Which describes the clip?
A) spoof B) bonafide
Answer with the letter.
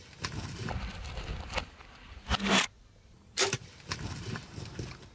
B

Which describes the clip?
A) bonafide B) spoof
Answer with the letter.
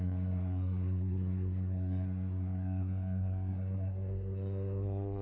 B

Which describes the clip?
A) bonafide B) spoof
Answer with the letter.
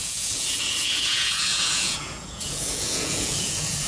B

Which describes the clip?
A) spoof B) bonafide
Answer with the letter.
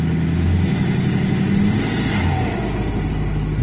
B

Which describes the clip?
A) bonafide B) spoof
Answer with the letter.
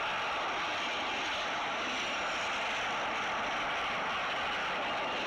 A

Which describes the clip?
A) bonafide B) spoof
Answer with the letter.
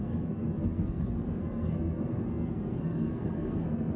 B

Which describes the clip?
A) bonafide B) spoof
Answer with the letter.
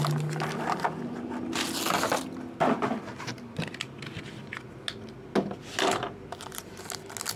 A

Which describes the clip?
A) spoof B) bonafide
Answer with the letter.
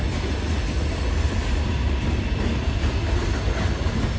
B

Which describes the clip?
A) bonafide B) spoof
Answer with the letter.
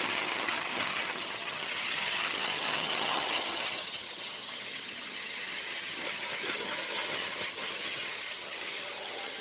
B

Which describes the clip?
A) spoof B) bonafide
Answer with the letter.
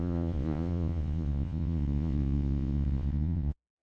A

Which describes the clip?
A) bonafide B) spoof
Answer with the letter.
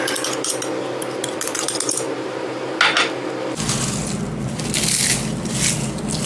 A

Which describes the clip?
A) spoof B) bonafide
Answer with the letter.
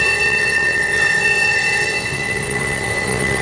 A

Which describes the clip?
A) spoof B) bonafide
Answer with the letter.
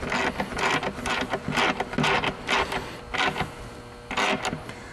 B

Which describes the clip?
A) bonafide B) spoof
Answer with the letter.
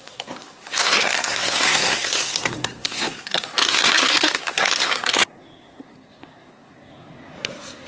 B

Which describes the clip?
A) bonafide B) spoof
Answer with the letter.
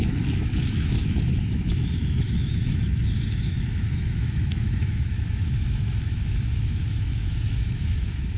B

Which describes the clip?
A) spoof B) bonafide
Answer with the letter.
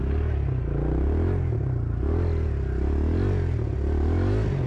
B